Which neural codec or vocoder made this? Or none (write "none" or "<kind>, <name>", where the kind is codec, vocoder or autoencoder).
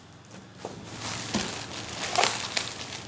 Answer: none